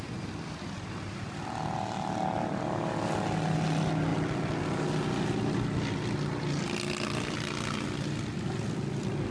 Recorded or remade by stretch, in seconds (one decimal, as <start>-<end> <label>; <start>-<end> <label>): 0.0-9.3 recorded